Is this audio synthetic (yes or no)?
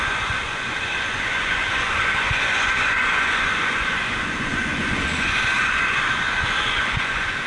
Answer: yes